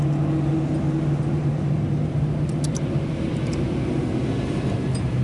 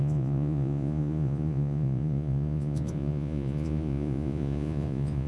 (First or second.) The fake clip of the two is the second